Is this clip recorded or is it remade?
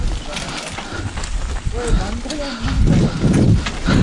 recorded